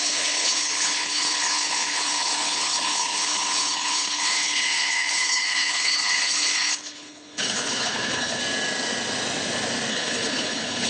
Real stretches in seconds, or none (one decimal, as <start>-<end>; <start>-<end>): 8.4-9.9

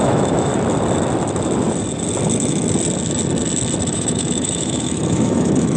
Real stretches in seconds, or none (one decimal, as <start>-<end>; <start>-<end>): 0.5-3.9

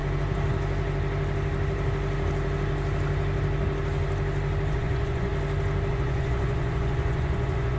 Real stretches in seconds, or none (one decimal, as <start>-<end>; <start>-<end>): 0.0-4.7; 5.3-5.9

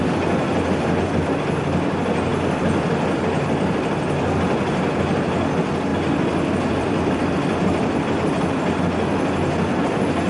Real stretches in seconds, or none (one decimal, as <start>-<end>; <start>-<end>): 0.0-10.3

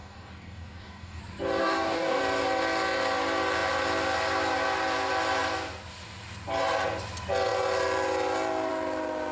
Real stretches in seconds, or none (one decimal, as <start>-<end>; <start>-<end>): 1.2-1.6; 2.2-9.3

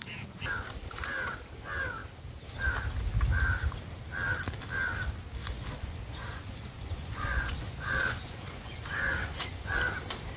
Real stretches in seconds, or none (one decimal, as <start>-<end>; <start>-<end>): 0.0-5.4; 9.8-10.4

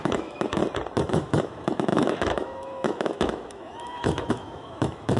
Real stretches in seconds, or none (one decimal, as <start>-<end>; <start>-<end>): 0.6-1.1

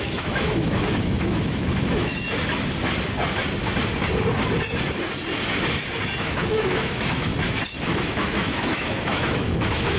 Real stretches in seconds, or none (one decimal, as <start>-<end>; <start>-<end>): 2.1-6.2; 7.3-7.9